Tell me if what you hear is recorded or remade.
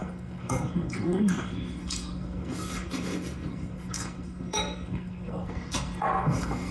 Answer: remade